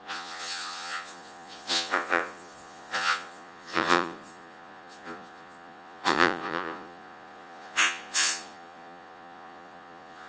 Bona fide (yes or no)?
no